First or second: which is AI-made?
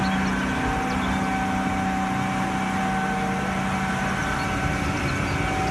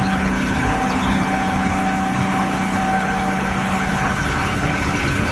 second